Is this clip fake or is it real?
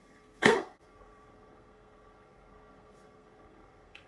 fake